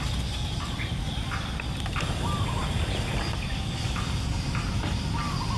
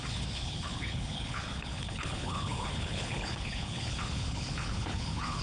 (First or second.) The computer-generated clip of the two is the second